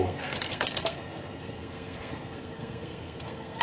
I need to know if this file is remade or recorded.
remade